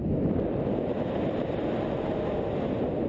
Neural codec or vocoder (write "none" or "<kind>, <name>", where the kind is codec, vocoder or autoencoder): none